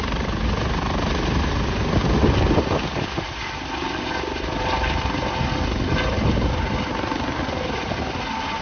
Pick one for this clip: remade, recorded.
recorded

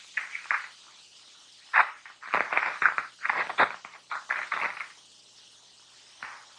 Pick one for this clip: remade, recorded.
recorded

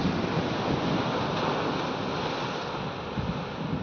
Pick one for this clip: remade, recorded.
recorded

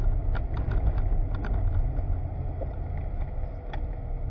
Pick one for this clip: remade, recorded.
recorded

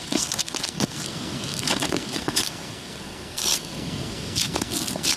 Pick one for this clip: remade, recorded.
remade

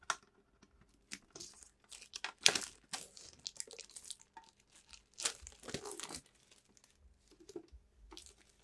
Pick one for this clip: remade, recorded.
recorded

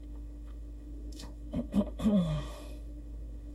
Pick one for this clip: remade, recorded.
remade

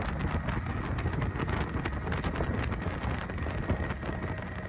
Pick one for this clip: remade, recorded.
recorded